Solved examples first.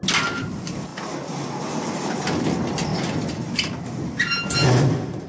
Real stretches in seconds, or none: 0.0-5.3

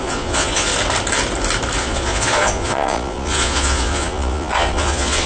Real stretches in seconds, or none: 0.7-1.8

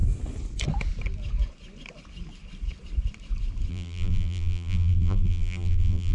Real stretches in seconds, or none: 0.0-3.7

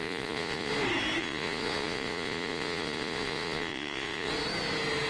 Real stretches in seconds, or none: 0.7-1.2; 4.3-5.1

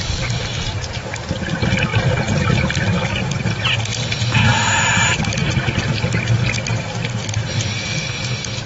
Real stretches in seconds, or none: 0.0-8.7

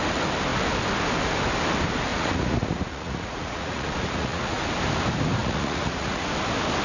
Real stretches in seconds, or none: 0.0-2.1; 4.6-5.4; 6.3-6.8

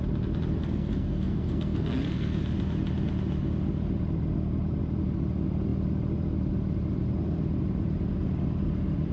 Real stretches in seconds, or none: 0.0-0.6; 2.4-9.1